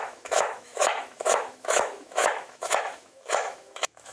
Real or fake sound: fake